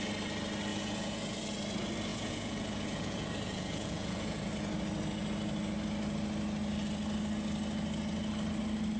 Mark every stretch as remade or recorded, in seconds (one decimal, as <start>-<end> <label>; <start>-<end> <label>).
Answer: 0.0-0.7 recorded; 0.7-1.4 remade; 1.4-2.1 recorded; 2.1-4.5 remade; 4.5-9.0 recorded